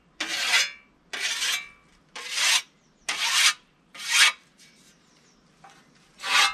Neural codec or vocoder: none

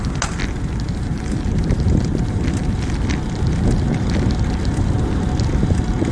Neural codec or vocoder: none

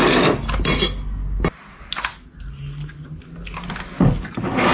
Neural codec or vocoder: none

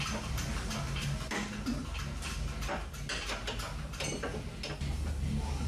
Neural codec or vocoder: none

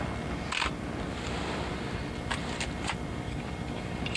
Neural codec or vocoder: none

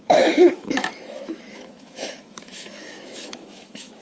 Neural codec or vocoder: autoencoder, DAC-VAE